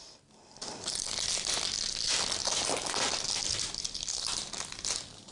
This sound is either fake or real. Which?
real